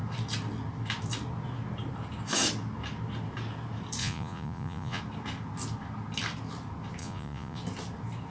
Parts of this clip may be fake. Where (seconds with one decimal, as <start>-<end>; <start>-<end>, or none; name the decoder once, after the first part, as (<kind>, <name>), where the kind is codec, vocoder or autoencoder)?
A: 4.0-5.0 (vocoder, Vocos); 7.0-7.6